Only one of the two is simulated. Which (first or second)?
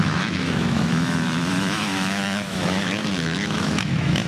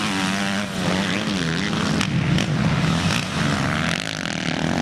first